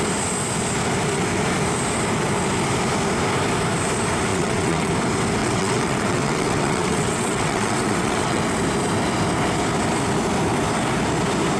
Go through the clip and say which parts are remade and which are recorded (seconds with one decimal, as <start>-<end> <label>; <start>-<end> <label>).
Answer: 0.0-4.3 recorded; 4.3-4.9 remade; 4.9-5.4 recorded; 5.4-8.4 remade; 8.4-11.6 recorded